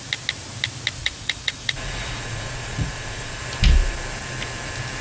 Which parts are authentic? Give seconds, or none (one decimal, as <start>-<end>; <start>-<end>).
0.0-1.0; 3.4-5.0